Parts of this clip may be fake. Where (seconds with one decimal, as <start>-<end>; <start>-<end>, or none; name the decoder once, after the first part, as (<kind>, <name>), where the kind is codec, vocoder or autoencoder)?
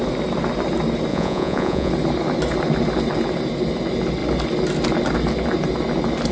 1.1-1.9 (vocoder, Vocos)